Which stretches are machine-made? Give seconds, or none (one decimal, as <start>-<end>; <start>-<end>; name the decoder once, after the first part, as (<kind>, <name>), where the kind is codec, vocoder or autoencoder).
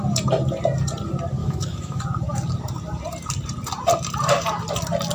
1.4-2.0 (autoencoder, DAC-VAE)